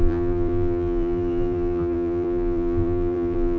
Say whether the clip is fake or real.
fake